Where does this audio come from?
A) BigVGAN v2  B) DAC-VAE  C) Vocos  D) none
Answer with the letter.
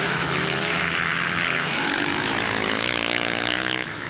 B